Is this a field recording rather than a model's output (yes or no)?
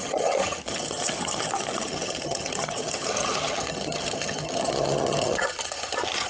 no